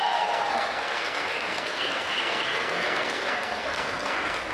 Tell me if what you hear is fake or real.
fake